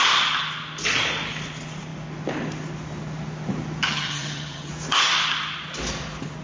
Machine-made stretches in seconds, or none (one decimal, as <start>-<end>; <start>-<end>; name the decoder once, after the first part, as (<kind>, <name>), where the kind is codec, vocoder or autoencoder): 3.9-4.7 (vocoder, HiFi-GAN)